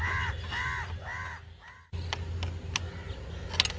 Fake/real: real